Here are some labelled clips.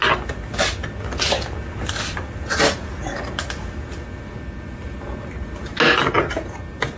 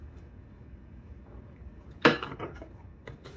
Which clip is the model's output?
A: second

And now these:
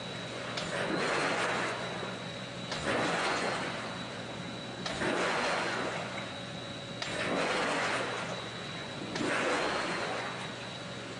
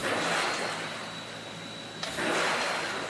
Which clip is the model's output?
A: first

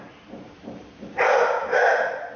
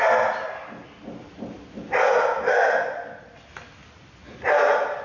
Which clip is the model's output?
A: first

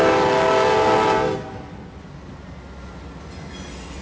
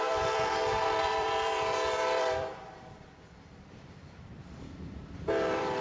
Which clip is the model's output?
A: second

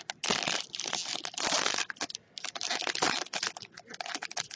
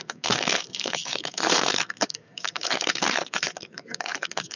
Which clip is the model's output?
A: second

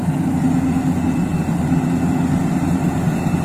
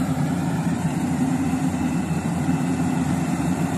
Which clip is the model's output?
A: second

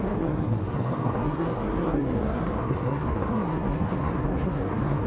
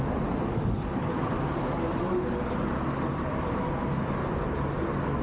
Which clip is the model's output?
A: first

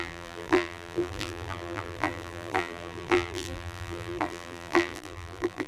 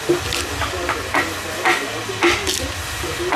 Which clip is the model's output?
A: first